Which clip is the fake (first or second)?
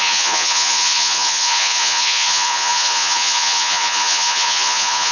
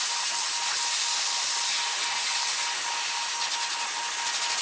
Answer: first